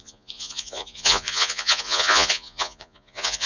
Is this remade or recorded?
remade